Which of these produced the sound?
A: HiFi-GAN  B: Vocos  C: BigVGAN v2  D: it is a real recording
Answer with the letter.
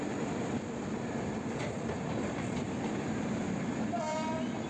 D